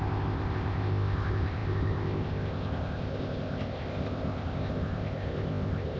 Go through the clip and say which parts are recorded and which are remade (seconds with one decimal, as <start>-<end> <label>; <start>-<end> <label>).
0.0-6.0 remade